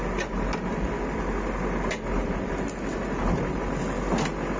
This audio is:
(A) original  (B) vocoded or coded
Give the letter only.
A